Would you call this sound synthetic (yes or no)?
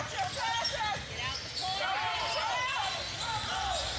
no